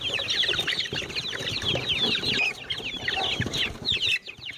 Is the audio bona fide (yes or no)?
yes